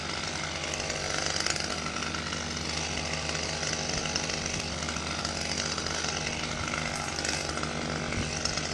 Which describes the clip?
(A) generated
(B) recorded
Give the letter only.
B